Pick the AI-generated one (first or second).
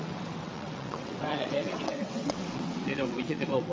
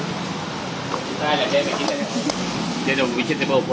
first